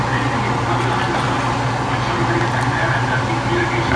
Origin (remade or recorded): recorded